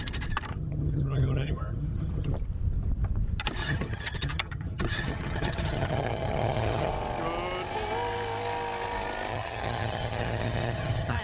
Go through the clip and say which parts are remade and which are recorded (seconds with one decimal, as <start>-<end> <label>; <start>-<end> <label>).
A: 0.0-0.5 recorded; 0.5-2.3 remade; 2.3-3.6 recorded; 3.6-6.9 remade; 6.9-9.3 recorded; 9.3-11.2 remade